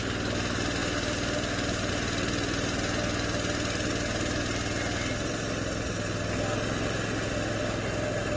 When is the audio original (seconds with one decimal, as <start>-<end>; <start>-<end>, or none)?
0.0-8.4